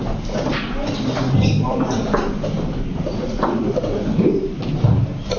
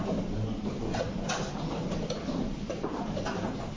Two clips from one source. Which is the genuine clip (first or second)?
first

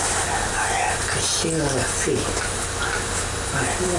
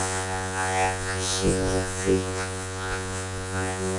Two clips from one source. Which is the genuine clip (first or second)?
first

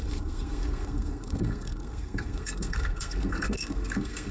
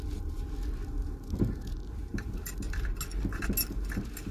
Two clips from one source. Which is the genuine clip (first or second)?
second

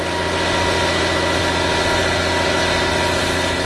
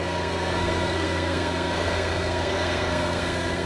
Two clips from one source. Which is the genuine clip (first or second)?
first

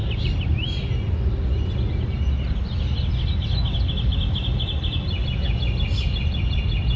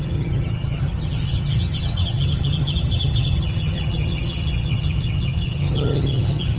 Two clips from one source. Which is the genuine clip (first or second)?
first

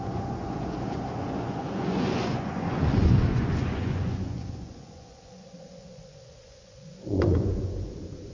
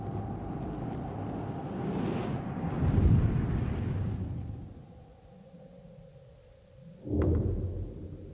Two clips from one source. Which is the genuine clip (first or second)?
second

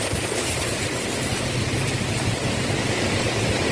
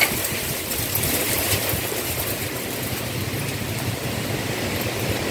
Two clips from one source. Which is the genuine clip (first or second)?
first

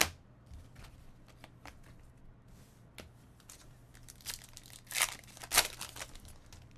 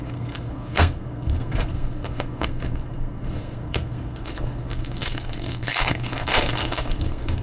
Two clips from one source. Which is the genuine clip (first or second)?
first